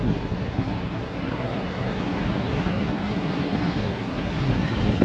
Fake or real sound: fake